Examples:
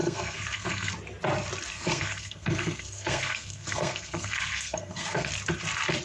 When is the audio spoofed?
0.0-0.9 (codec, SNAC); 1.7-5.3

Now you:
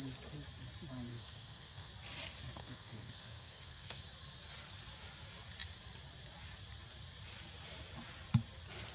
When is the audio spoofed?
1.1-1.9 (codec, SNAC); 2.6-4.0

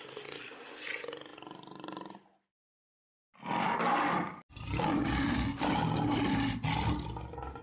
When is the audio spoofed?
none

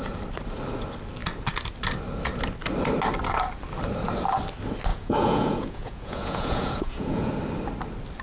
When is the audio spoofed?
4.9-7.3 (vocoder, Vocos)

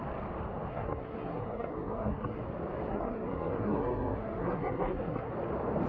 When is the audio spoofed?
0.7-2.4 (codec, SNAC); 2.9-5.3

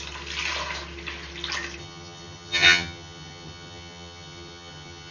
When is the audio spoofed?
1.8-5.1 (vocoder, HiFi-GAN)

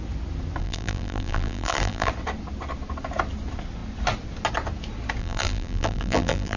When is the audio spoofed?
0.6-2.1 (vocoder, BigVGAN v2); 5.2-6.6

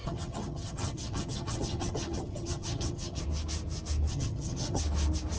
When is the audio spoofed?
0.0-3.2 (vocoder, HiFi-GAN); 4.1-4.8